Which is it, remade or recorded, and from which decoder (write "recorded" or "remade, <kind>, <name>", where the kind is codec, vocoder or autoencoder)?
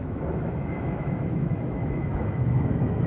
remade, autoencoder, DAC-VAE